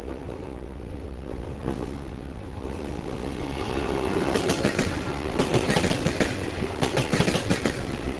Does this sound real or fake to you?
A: fake